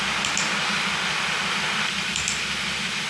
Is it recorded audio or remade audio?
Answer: recorded